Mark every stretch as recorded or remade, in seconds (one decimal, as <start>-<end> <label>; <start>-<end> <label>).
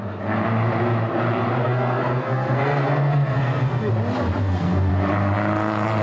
0.0-1.6 recorded; 1.6-3.9 remade; 3.9-4.4 recorded; 4.4-4.9 remade; 4.9-6.0 recorded